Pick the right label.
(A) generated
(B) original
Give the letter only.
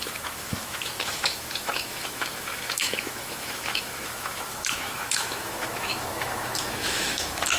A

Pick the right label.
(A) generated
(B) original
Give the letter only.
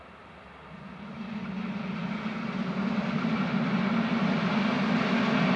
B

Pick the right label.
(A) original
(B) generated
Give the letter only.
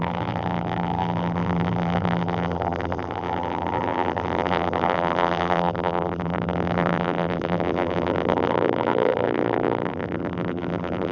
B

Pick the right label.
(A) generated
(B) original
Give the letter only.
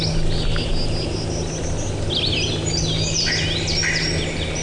B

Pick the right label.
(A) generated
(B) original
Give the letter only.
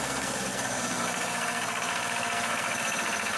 A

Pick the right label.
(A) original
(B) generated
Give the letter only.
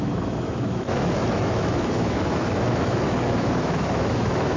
B